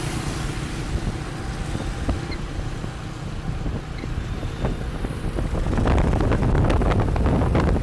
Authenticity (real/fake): real